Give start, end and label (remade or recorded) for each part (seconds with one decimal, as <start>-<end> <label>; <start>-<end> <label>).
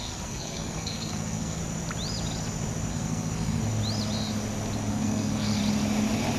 0.0-1.6 remade; 1.6-2.9 recorded; 2.9-3.6 remade; 3.6-4.9 recorded; 4.9-5.6 remade; 5.6-6.4 recorded